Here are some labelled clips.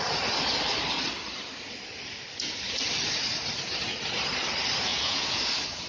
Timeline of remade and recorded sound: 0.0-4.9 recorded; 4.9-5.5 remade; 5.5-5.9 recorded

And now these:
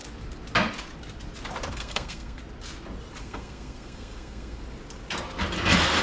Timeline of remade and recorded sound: 0.0-1.7 recorded; 1.7-2.4 remade; 2.4-3.2 recorded; 3.2-4.6 remade; 4.6-6.0 recorded

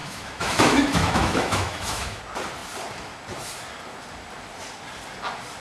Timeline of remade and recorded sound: 0.0-2.2 remade; 2.2-5.6 recorded